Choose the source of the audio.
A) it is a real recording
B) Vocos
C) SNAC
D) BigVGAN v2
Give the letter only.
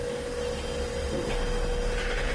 A